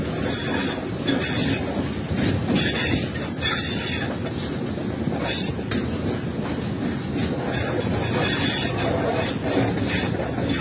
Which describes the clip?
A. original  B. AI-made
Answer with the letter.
A